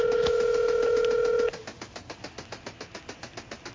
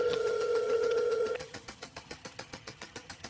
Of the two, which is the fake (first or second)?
second